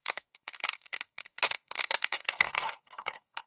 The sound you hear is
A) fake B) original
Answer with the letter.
A